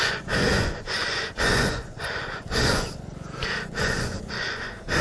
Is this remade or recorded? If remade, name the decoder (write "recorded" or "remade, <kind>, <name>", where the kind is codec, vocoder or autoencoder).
remade, vocoder, Vocos